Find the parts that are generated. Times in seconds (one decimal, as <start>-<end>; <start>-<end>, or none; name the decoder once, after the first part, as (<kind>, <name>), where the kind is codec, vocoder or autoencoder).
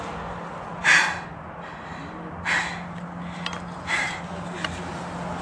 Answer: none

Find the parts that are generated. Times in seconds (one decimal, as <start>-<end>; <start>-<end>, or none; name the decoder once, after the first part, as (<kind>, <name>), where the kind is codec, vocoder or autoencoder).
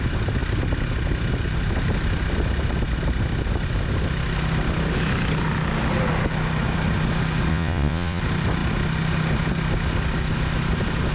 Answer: 7.5-8.2 (vocoder, Vocos)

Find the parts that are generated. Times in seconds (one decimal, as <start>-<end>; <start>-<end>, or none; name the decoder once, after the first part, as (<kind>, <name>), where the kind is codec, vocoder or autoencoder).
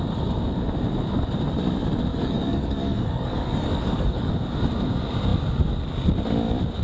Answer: 2.1-4.3 (codec, DAC)